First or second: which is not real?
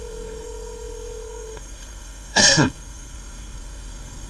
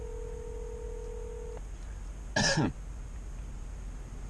first